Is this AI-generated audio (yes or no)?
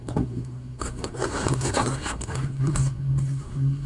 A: yes